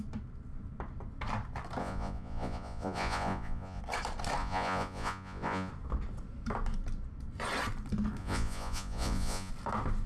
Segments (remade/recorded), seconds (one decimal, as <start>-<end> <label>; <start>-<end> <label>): 0.0-1.8 recorded; 1.8-3.8 remade; 3.8-4.4 recorded; 4.4-5.7 remade; 5.7-8.2 recorded; 8.2-9.5 remade; 9.5-10.1 recorded